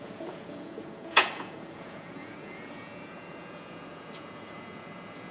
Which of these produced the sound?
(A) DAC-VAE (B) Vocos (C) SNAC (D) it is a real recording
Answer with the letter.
B